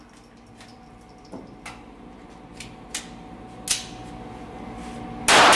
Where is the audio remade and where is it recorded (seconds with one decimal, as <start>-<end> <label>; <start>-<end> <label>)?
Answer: 0.0-0.7 recorded; 0.7-2.9 remade; 2.9-5.6 recorded